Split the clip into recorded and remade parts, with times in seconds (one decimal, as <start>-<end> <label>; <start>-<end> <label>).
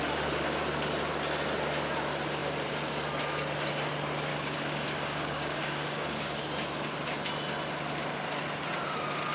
0.0-4.3 recorded; 4.3-6.4 remade; 6.4-9.3 recorded